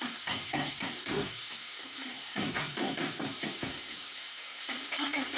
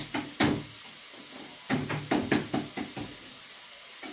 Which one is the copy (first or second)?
first